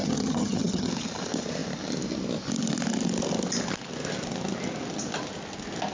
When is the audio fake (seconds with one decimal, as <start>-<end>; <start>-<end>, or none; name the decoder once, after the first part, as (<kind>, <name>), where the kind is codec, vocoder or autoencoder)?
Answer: 0.0-0.9 (vocoder, HiFi-GAN)